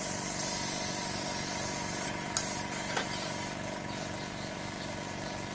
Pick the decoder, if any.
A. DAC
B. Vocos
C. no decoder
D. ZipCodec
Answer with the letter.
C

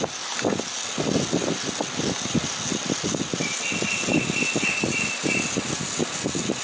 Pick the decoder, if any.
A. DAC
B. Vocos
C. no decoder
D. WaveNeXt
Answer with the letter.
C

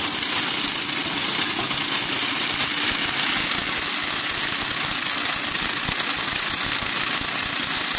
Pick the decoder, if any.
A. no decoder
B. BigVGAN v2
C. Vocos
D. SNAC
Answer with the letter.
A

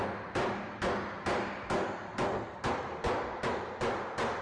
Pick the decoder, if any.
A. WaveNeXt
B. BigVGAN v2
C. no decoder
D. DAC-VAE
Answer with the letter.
C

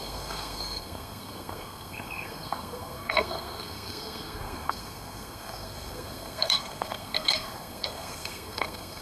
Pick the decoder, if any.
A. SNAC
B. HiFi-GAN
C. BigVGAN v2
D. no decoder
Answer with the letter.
A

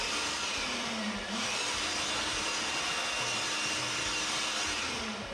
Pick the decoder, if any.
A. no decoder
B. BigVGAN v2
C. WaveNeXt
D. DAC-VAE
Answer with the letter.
B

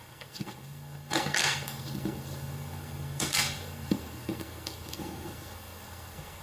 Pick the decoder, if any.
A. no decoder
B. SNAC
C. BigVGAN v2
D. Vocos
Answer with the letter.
B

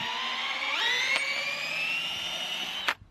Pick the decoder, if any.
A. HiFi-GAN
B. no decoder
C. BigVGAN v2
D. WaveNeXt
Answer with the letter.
B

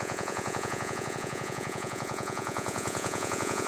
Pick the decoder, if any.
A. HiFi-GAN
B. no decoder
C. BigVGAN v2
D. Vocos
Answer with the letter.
D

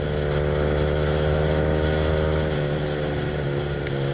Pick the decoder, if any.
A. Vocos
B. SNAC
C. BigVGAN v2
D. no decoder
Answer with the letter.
D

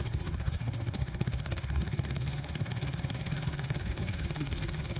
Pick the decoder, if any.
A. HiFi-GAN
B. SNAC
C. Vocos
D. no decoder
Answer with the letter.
B